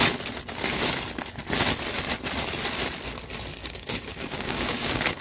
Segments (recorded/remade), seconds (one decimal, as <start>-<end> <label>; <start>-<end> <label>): 0.0-3.6 recorded; 3.6-5.2 remade